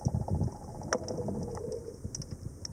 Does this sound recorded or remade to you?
recorded